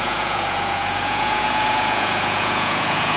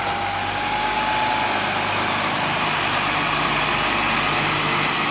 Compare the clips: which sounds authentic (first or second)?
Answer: second